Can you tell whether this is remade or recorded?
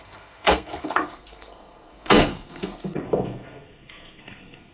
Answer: remade